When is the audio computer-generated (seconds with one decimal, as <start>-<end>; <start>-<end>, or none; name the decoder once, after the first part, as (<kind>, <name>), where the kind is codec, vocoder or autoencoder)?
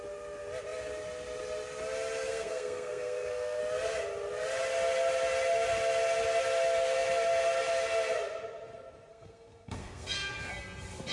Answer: 2.3-3.6 (codec, SNAC); 9.1-10.5